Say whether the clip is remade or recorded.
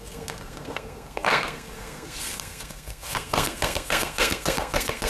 remade